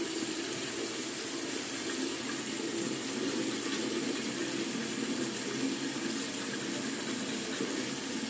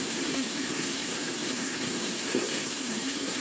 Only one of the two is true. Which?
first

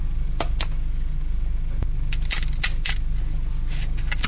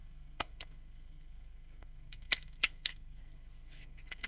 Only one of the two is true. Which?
first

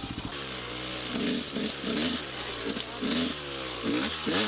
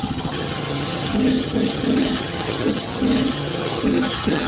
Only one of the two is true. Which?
first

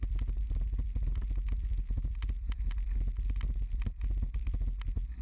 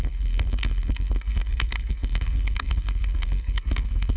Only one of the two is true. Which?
first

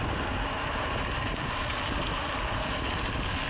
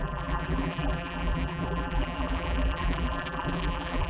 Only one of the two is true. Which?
first